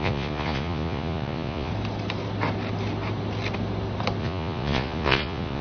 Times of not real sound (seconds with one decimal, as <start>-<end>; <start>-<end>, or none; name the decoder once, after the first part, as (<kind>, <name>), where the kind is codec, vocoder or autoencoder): 0.0-1.7 (vocoder, Vocos); 4.2-5.6